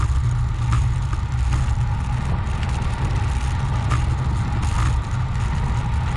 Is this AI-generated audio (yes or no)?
no